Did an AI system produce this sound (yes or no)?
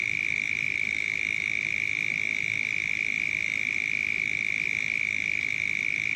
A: no